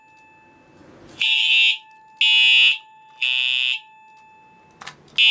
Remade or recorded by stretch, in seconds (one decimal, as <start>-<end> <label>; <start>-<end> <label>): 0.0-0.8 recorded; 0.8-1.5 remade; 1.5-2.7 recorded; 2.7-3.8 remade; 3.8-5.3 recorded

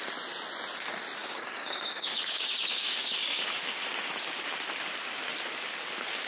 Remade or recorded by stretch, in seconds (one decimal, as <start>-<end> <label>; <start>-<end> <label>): 0.0-1.2 recorded; 1.2-4.1 remade; 4.1-6.3 recorded

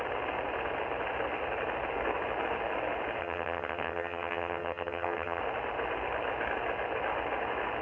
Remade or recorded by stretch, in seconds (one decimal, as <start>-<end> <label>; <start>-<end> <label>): 0.0-3.2 recorded; 3.2-5.4 remade; 5.4-7.8 recorded

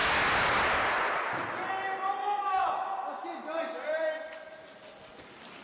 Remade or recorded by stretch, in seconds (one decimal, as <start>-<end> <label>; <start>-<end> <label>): 0.0-2.2 recorded; 2.2-2.7 remade; 2.7-5.6 recorded

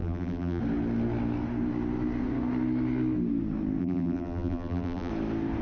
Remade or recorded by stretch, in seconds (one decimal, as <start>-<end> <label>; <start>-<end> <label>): 0.0-0.6 remade; 0.6-3.8 recorded; 3.8-5.1 remade; 5.1-5.6 recorded

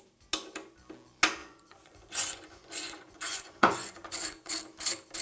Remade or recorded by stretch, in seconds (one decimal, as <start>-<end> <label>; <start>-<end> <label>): 0.0-1.4 recorded; 1.4-4.5 remade; 4.5-5.2 recorded